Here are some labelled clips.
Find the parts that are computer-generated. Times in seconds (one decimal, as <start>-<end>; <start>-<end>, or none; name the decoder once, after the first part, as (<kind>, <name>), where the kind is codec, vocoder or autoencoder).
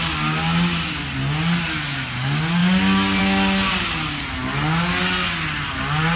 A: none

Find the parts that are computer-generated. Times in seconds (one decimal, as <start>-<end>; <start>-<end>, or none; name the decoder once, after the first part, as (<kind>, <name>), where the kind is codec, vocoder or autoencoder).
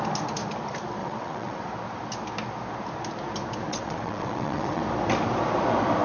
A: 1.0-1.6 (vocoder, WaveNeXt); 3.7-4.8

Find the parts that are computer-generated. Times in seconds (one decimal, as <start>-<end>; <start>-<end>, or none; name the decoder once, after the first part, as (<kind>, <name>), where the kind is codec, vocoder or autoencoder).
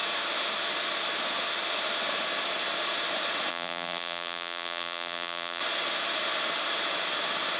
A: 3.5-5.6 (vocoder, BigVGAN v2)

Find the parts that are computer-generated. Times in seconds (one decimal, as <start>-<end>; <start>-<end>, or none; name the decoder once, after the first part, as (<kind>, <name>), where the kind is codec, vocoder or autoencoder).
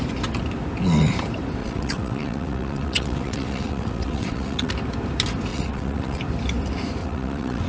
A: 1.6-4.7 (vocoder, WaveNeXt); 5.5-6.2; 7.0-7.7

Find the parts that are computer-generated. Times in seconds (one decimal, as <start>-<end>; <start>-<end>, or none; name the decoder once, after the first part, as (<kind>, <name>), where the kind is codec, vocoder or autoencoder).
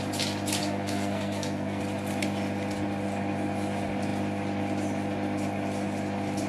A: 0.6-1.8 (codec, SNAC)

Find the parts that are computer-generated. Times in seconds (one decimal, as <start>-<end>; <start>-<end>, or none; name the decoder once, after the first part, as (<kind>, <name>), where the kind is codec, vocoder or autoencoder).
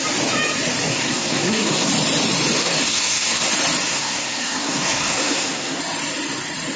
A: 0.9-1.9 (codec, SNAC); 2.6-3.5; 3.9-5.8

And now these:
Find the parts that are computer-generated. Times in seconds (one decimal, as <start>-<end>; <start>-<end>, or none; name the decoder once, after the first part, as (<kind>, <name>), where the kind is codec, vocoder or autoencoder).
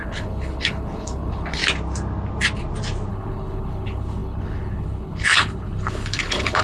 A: 0.0-1.6 (codec, HILCodec); 3.1-6.6